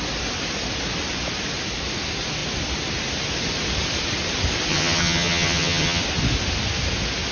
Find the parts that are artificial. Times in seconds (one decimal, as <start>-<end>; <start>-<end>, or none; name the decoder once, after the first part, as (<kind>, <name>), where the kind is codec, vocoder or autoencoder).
4.7-6.0 (vocoder, HiFi-GAN)